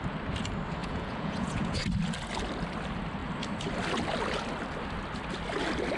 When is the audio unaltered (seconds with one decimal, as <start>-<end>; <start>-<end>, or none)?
0.0-0.8; 1.8-6.0